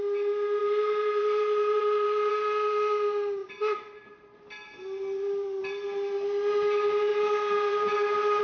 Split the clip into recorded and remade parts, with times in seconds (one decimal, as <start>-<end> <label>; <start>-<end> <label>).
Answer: 0.0-0.6 recorded; 0.6-2.3 remade; 2.3-7.1 recorded; 7.1-8.4 remade